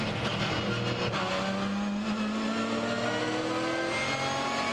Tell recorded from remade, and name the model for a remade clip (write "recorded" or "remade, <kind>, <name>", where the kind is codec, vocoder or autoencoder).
recorded